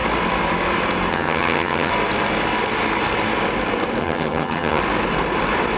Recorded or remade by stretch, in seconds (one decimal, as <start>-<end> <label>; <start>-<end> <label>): 0.0-1.1 recorded; 1.1-1.9 remade; 1.9-4.0 recorded; 4.0-4.8 remade; 4.8-5.8 recorded